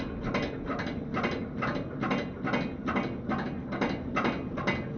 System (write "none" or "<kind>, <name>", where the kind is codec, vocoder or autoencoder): none